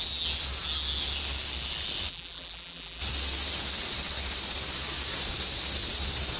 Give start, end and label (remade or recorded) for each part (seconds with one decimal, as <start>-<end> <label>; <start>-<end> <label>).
0.0-2.1 recorded; 2.1-3.0 remade; 3.0-6.4 recorded